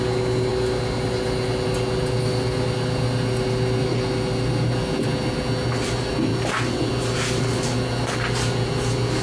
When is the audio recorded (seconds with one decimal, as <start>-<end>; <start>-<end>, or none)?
0.0-9.2